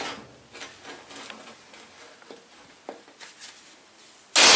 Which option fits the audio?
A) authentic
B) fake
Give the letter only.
A